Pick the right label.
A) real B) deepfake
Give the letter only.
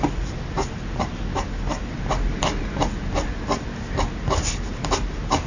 A